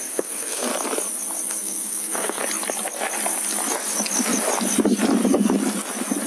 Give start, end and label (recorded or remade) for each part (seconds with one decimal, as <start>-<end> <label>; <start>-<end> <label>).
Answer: 0.0-0.7 remade; 0.7-1.5 recorded; 1.5-2.4 remade; 2.4-6.3 recorded